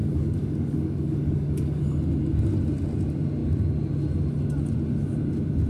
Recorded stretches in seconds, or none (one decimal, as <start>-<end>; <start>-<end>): 1.8-5.7